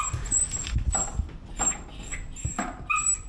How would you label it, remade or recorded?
recorded